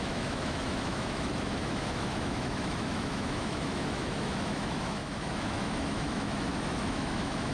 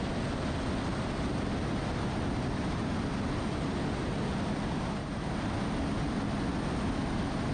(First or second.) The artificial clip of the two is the first